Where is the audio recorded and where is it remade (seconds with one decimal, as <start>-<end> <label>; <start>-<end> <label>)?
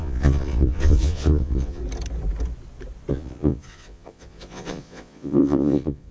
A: 0.0-1.8 remade; 1.8-3.1 recorded; 3.1-6.1 remade